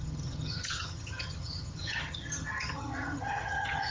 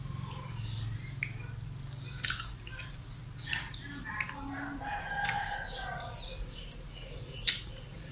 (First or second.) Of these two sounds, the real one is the second